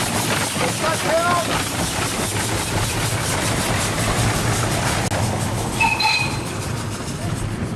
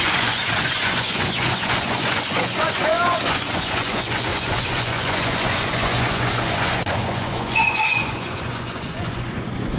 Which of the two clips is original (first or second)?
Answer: first